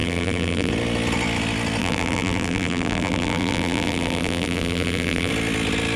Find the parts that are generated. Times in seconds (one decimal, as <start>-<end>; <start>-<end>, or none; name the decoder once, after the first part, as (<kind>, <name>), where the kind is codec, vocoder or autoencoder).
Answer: 0.0-0.7 (vocoder, BigVGAN v2); 1.8-5.3